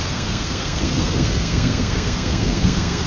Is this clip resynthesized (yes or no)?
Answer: yes